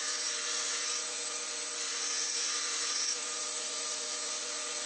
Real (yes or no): no